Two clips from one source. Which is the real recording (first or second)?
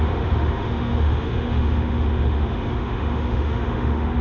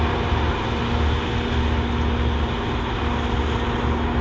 second